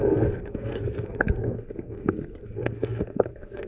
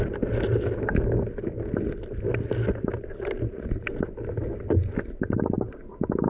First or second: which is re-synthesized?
first